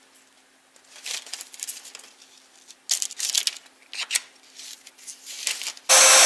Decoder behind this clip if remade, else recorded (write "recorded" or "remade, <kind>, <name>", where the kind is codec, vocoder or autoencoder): recorded